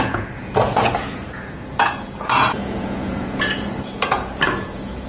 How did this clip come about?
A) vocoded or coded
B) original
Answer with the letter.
A